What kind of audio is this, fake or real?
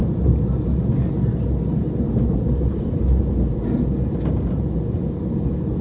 real